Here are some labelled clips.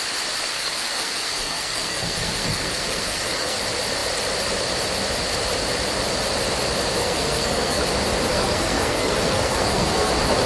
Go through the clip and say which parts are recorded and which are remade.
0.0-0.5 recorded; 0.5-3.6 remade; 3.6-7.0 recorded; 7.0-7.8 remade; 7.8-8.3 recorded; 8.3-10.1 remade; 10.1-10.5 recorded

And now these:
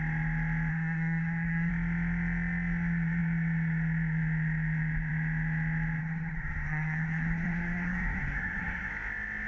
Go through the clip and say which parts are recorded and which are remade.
0.0-0.7 recorded; 0.7-1.7 remade; 1.7-6.0 recorded; 6.0-8.9 remade; 8.9-9.5 recorded

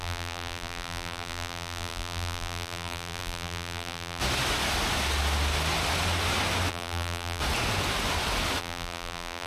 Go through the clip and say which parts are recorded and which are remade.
0.0-4.2 remade; 4.2-6.7 recorded; 6.7-7.4 remade; 7.4-8.6 recorded; 8.6-9.5 remade

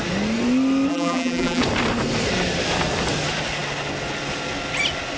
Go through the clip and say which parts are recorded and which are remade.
0.0-0.9 recorded; 0.9-1.6 remade; 1.6-5.2 recorded

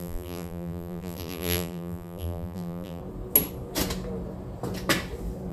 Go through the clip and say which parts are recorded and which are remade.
0.0-3.0 remade; 3.0-5.5 recorded

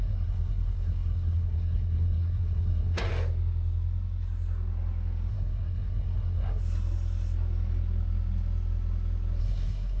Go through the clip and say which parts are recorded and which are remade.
0.0-3.1 remade; 3.1-5.3 recorded; 5.3-6.6 remade; 6.6-9.4 recorded; 9.4-10.0 remade